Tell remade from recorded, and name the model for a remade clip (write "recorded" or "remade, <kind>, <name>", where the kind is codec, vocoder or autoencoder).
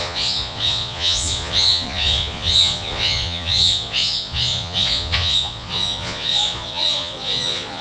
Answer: remade, vocoder, Vocos